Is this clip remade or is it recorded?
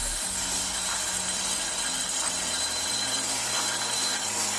recorded